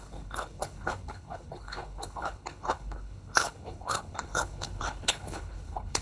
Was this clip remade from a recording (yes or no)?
yes